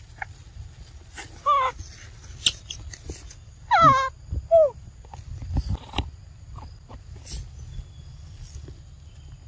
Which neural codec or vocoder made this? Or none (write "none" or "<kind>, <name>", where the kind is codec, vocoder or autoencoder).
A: none